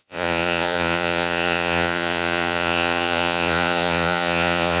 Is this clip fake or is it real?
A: fake